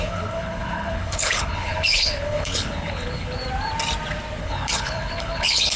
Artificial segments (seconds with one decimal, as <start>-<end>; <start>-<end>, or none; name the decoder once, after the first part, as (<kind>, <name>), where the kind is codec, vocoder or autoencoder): 0.0-3.4 (codec, HILCodec); 4.4-5.8